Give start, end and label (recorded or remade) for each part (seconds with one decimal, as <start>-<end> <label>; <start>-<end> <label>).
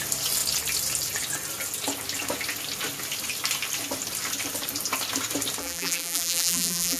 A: 0.0-5.6 recorded; 5.6-7.0 remade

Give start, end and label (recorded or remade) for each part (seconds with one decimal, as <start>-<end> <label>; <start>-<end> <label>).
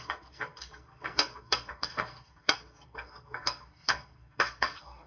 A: 0.0-5.1 remade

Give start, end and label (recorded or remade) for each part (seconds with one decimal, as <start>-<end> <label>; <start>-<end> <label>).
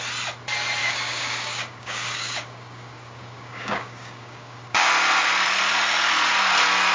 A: 0.0-0.8 recorded; 0.8-4.9 remade; 4.9-6.9 recorded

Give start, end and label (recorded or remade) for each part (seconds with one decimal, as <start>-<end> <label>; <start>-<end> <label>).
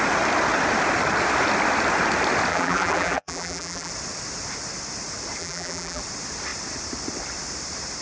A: 0.0-2.5 recorded; 2.5-3.9 remade; 3.9-5.4 recorded; 5.4-6.0 remade; 6.0-8.0 recorded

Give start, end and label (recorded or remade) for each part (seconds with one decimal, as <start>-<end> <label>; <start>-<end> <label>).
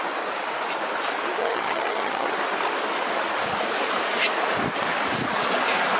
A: 0.0-1.4 recorded; 1.4-2.3 remade; 2.3-6.0 recorded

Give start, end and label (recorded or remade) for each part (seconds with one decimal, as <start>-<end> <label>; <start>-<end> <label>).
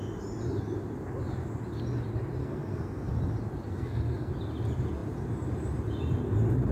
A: 0.0-2.4 recorded; 2.4-3.1 remade; 3.1-3.7 recorded; 3.7-4.3 remade; 4.3-6.7 recorded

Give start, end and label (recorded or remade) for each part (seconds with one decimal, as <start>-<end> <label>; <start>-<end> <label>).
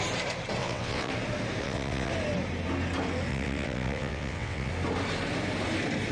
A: 0.0-0.6 recorded; 0.6-1.1 remade; 1.1-1.6 recorded; 1.6-2.1 remade; 2.1-3.3 recorded; 3.3-4.7 remade; 4.7-6.1 recorded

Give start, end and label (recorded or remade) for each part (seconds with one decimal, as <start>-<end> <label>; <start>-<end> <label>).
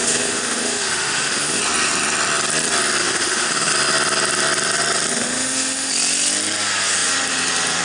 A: 0.0-1.6 remade; 1.6-3.0 recorded; 3.0-3.7 remade; 3.7-5.1 recorded; 5.1-5.9 remade; 5.9-7.8 recorded